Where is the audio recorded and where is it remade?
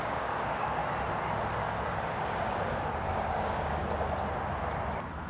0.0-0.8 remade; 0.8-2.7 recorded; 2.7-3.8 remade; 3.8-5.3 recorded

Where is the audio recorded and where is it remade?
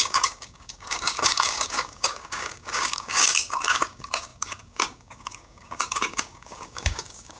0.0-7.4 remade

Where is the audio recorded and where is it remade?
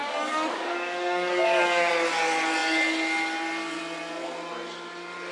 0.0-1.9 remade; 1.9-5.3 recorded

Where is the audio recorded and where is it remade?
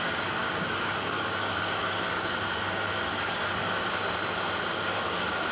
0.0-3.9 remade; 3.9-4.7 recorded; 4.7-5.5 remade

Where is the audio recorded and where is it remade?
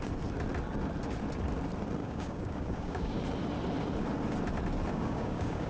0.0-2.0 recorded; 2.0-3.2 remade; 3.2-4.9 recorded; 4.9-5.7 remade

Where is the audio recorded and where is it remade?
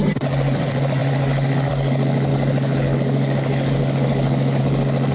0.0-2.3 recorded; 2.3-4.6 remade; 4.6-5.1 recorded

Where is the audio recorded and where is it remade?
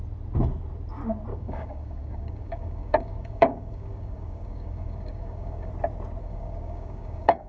0.0-1.3 recorded; 1.3-5.7 remade; 5.7-6.2 recorded; 6.2-7.5 remade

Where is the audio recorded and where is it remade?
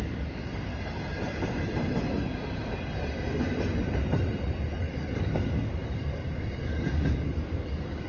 0.0-0.7 remade; 0.7-4.8 recorded; 4.8-8.1 remade